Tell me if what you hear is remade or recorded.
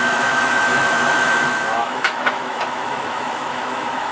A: remade